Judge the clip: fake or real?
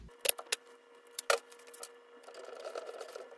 real